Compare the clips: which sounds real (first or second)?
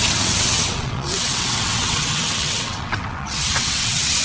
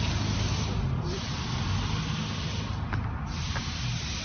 second